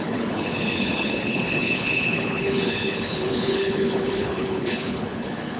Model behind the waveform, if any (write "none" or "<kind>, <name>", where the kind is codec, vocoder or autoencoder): codec, HILCodec